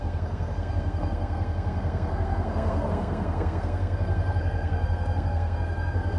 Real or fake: fake